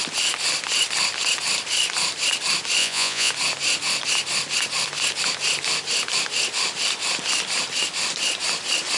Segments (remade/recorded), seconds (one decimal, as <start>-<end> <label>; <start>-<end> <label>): 0.0-2.8 recorded; 2.8-3.3 remade; 3.3-9.0 recorded